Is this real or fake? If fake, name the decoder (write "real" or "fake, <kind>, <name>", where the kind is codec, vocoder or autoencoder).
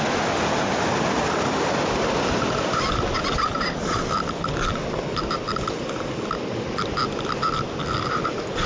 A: real